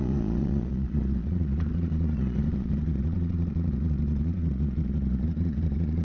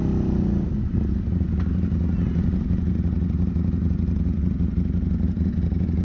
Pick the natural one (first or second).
second